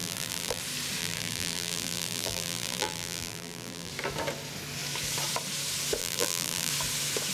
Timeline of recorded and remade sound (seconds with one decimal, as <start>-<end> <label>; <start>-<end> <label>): 0.0-0.6 remade; 0.6-1.0 recorded; 1.0-3.9 remade; 3.9-6.0 recorded; 6.0-6.7 remade; 6.7-7.3 recorded